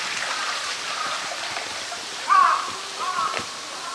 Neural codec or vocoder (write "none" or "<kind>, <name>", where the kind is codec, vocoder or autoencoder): none